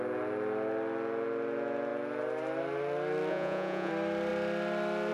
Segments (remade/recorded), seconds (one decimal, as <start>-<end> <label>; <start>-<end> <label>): 0.0-3.3 recorded; 3.3-3.9 remade; 3.9-5.1 recorded